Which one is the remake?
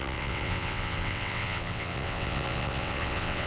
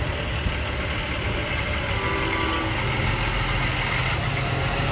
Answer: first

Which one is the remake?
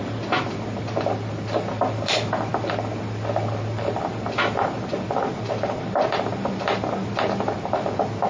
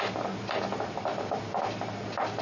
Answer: first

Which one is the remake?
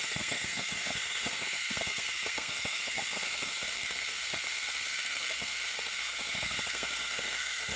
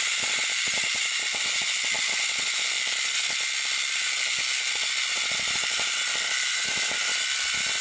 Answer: first